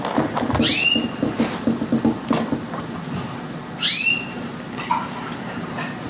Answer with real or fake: real